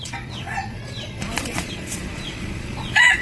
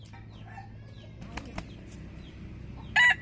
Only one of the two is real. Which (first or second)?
second